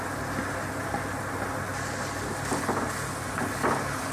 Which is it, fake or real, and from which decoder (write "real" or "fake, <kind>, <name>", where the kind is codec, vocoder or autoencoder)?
real